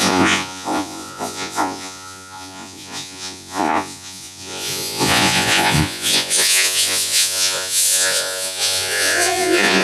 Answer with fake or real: fake